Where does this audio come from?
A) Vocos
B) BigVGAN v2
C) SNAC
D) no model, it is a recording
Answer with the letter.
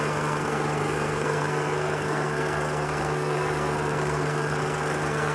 C